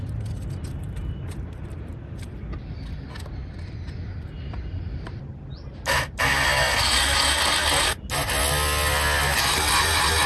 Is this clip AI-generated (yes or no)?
no